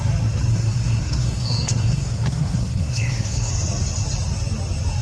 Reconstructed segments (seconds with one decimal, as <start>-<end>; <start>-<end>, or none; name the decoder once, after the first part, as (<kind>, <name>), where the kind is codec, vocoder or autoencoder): 0.5-3.5 (codec, SNAC)